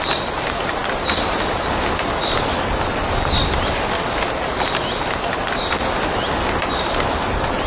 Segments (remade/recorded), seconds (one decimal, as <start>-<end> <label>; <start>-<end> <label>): 0.0-7.7 recorded